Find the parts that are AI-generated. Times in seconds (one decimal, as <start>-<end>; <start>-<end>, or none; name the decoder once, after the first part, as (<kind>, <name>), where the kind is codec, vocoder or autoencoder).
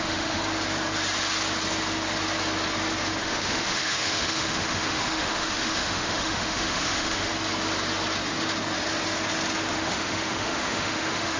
0.0-0.4 (autoencoder, DAC-VAE); 3.2-7.3; 9.7-11.4